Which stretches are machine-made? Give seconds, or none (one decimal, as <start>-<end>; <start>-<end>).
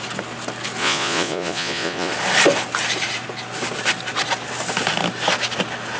0.8-2.1